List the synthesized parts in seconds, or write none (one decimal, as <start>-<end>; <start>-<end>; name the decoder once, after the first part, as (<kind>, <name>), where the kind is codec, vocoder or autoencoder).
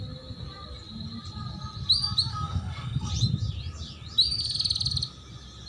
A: 2.3-3.1 (codec, SNAC)